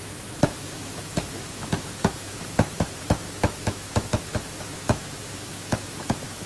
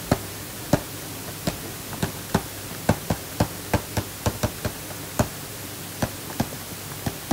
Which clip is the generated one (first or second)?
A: first